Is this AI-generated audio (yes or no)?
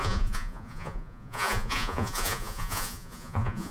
yes